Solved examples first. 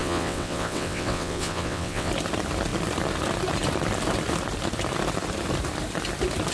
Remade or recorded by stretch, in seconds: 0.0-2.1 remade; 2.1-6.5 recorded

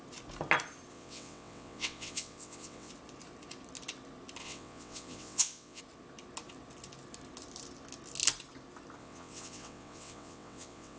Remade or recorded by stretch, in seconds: 0.0-0.9 recorded; 0.9-2.9 remade; 2.9-4.4 recorded; 4.4-5.8 remade; 5.8-9.0 recorded; 9.0-11.0 remade